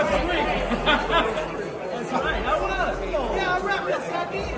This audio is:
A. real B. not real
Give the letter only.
A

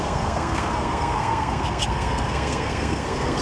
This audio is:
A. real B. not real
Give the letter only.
B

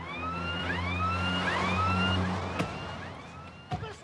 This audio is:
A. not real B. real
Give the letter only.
B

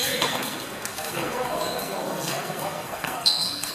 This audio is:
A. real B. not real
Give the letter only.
B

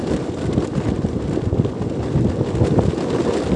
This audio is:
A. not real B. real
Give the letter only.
B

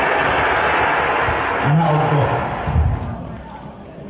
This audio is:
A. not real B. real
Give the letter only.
B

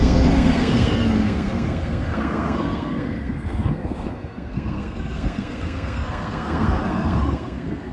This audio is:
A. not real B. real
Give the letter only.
A